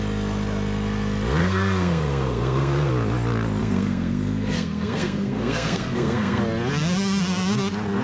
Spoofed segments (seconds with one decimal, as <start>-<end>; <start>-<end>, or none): 1.4-2.9; 3.6-6.4

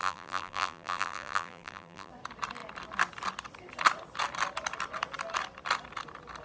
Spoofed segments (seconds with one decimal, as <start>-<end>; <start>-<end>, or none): 0.0-2.1